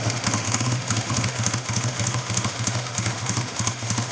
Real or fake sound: fake